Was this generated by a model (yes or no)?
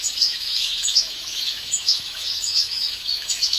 yes